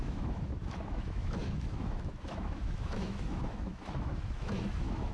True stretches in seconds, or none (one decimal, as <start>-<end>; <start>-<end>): none